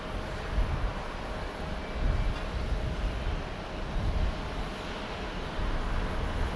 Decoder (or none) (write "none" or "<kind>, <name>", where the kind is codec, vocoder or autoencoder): none